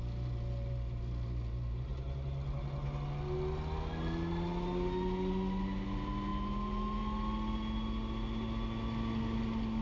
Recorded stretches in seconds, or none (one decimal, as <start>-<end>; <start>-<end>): 0.0-9.8